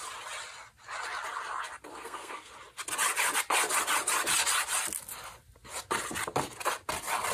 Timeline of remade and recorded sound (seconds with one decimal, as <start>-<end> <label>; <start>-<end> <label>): 0.0-1.9 recorded; 1.9-2.5 remade; 2.5-7.3 recorded